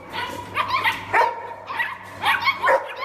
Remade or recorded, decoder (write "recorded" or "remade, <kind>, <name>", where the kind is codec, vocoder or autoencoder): recorded